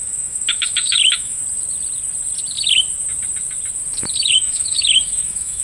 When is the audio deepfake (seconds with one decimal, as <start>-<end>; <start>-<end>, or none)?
0.0-1.4; 4.3-5.6